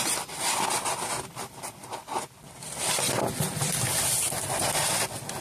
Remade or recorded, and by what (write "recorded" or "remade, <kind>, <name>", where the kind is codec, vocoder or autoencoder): recorded